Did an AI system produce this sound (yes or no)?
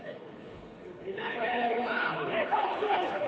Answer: yes